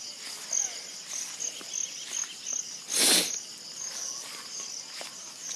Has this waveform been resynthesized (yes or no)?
no